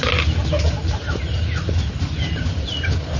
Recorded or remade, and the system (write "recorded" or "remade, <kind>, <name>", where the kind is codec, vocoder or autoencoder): recorded